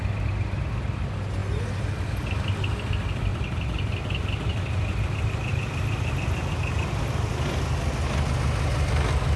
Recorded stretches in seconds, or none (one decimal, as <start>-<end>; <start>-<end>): 0.0-9.4